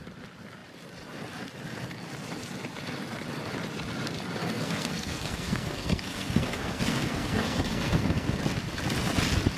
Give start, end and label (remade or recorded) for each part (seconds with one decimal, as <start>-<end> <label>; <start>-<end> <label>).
0.0-4.4 recorded; 4.4-8.4 remade; 8.4-9.6 recorded